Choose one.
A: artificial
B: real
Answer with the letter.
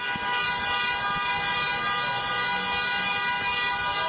B